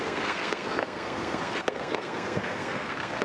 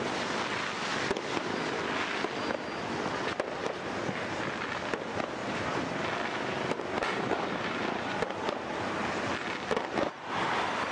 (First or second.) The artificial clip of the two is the first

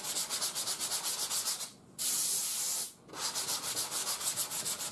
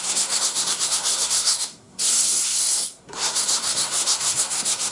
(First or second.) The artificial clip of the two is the second